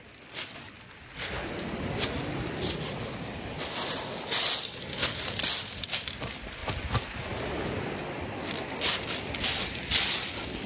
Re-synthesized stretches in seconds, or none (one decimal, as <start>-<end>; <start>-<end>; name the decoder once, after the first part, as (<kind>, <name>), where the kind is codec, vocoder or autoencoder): none